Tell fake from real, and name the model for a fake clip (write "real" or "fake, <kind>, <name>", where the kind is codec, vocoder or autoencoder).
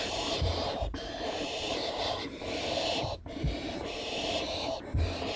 fake, vocoder, BigVGAN v2